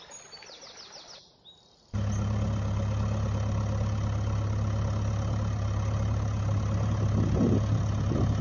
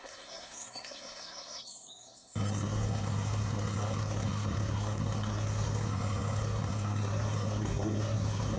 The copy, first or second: second